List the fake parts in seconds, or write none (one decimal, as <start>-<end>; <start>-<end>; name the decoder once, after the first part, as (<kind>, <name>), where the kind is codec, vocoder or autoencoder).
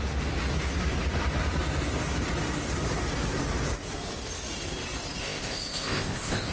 5.2-6.5 (codec, ZipCodec)